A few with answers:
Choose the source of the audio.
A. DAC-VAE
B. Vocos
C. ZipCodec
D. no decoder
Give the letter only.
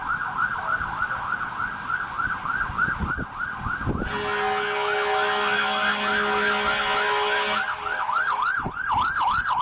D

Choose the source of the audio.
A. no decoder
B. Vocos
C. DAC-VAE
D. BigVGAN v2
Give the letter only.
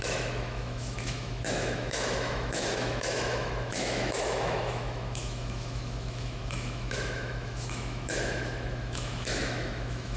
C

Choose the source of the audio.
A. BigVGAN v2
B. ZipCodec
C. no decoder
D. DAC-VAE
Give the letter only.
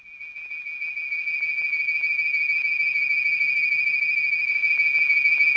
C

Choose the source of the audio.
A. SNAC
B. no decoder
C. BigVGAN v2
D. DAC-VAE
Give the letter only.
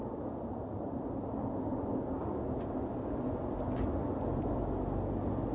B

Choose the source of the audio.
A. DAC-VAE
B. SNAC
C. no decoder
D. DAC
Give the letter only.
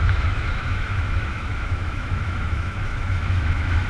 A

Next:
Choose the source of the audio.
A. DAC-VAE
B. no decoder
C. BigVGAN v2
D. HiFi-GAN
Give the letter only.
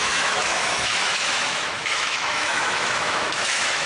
A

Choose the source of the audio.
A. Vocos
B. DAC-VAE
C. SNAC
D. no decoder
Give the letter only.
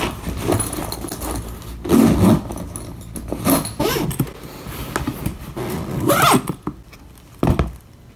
D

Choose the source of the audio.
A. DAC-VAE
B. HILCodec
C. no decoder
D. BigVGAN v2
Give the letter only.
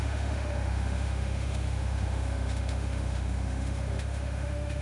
A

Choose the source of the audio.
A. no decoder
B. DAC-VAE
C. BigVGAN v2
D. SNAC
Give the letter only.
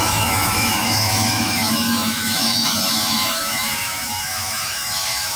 B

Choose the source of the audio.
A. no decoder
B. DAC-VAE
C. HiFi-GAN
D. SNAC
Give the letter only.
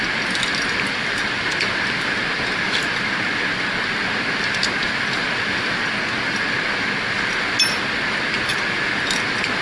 A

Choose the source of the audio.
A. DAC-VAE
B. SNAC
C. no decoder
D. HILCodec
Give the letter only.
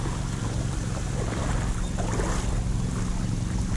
C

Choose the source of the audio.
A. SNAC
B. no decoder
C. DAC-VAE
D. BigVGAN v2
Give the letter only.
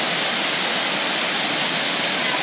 B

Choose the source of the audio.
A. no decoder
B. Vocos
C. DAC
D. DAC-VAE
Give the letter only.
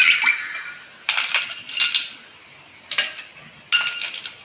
A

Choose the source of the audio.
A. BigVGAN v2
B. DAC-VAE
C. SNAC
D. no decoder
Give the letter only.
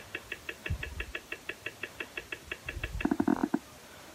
D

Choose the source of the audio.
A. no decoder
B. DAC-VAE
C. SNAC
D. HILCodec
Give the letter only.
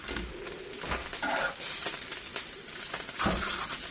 A